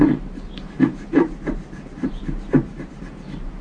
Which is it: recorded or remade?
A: remade